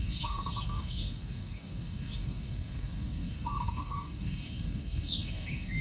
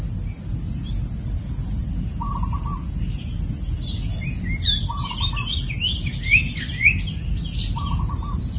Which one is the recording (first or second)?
second